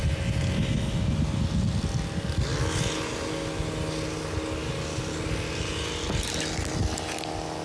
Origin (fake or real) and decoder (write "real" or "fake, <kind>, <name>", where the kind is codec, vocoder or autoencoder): real